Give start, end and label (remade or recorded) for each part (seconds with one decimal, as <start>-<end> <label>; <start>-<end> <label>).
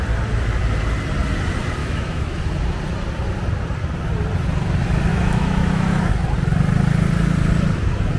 0.0-1.8 recorded; 1.8-2.4 remade; 2.4-5.1 recorded; 5.1-6.1 remade; 6.1-8.2 recorded